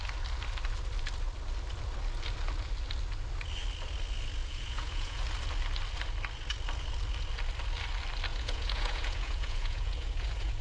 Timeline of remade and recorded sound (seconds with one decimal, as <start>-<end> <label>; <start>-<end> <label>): 0.0-4.4 recorded; 4.4-5.2 remade; 5.2-8.3 recorded; 8.3-10.6 remade